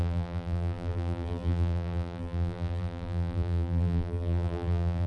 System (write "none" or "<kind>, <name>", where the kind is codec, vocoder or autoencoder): vocoder, BigVGAN v2